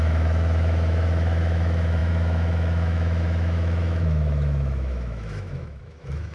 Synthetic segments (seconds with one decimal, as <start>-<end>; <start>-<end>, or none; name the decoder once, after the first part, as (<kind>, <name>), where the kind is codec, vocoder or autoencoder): 0.0-6.3 (autoencoder, DAC-VAE)